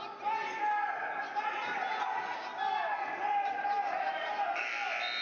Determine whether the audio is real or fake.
real